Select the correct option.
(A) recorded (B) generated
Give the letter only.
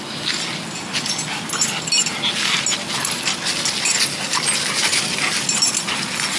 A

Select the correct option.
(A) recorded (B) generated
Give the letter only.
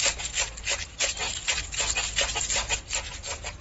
A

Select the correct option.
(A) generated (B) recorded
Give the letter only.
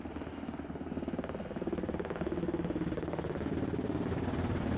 B